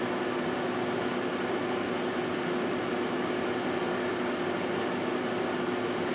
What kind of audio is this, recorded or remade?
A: recorded